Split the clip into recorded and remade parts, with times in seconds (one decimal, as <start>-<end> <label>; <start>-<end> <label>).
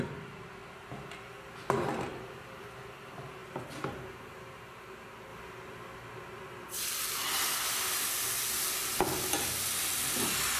0.0-10.6 recorded